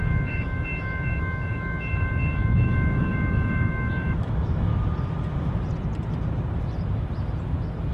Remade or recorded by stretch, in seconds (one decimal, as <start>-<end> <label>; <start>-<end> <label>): 0.0-4.7 remade; 4.7-7.9 recorded